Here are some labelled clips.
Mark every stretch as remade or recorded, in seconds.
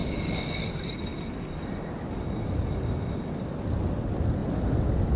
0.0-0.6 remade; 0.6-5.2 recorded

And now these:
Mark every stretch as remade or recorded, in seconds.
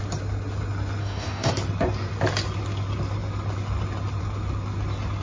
0.0-1.0 recorded; 1.0-1.5 remade; 1.5-5.2 recorded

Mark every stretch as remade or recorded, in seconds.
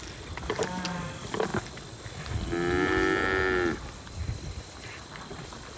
0.0-5.8 recorded